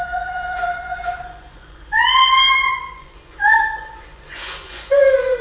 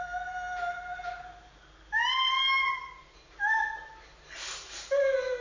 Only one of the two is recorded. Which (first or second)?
second